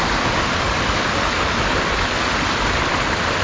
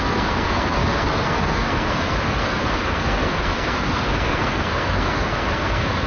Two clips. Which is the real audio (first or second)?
first